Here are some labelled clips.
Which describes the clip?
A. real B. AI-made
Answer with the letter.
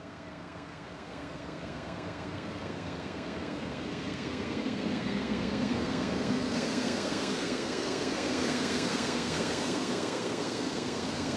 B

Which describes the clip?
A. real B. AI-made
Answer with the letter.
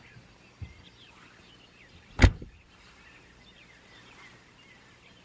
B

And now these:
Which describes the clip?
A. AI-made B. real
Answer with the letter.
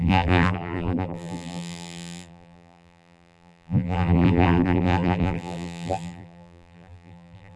A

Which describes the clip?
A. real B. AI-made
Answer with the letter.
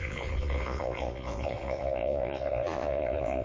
B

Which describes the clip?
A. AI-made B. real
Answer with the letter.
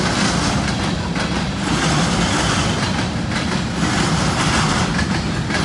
B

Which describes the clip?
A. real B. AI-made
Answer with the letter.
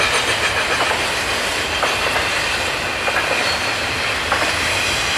A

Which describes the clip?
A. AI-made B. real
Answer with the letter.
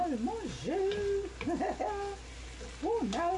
B